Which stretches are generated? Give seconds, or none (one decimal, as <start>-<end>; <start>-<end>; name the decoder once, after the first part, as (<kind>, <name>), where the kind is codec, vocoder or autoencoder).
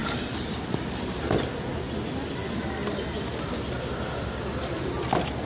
none